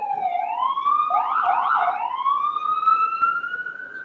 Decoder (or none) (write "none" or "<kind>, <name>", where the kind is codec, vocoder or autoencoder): none